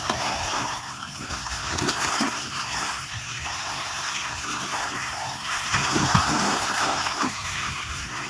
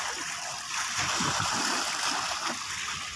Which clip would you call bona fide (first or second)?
second